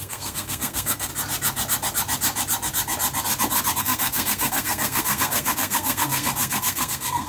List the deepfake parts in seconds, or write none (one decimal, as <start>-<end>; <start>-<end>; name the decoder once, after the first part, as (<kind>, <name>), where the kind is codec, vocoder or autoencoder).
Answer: 0.0-1.1 (codec, SNAC); 3.8-7.3